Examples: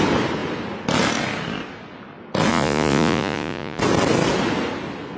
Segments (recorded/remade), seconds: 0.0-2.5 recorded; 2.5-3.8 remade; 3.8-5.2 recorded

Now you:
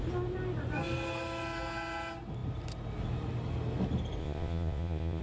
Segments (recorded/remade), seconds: 0.0-4.2 recorded; 4.2-5.2 remade

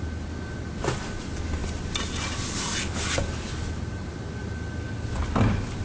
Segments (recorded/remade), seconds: 0.0-5.8 recorded

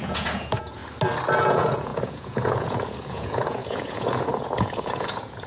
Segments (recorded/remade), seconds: 0.0-0.8 remade; 0.8-1.4 recorded; 1.4-5.5 remade